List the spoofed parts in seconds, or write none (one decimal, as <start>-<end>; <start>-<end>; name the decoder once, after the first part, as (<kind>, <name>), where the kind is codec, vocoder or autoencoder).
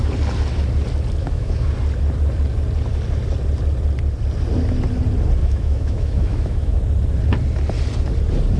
1.2-1.7 (autoencoder, DAC-VAE); 5.4-6.8